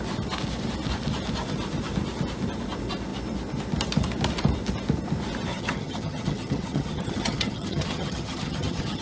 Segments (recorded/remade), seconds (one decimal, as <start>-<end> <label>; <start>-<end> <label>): 0.0-5.5 recorded; 5.5-9.0 remade